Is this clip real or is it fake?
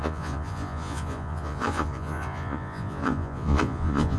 fake